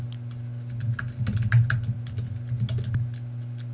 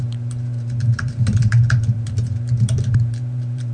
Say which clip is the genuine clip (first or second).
first